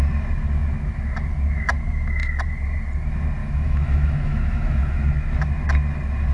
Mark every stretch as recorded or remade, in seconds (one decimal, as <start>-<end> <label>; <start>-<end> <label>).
0.0-3.4 recorded; 3.4-5.1 remade; 5.1-6.3 recorded